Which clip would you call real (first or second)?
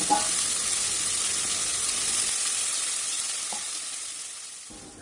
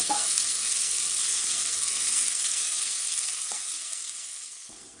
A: first